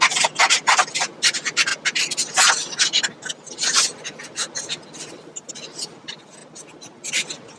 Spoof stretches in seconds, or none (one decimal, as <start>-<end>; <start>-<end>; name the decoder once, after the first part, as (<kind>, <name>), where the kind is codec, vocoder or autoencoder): none